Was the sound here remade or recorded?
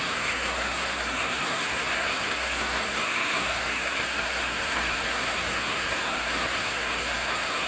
remade